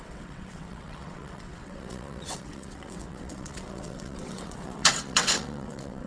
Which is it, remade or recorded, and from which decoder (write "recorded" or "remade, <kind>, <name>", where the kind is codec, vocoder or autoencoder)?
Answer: remade, vocoder, WaveNeXt